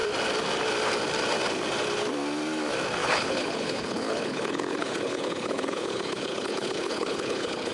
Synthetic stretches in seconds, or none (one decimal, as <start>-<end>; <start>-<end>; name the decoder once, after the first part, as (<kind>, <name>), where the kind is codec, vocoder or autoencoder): 3.0-7.7 (codec, HILCodec)